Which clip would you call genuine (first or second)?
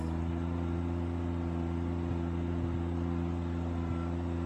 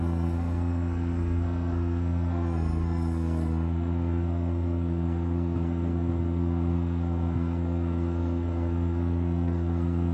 first